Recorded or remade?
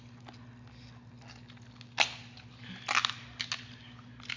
recorded